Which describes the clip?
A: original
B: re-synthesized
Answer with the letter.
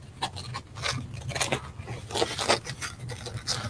A